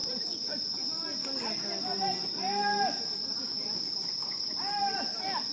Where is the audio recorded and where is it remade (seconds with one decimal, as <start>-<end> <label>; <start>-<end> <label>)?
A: 0.0-5.5 recorded